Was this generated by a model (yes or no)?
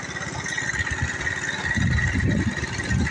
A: no